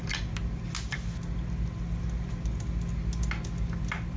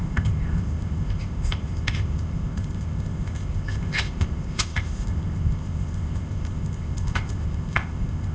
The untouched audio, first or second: first